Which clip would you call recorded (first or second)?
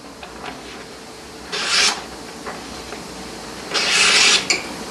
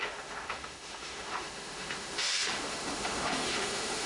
first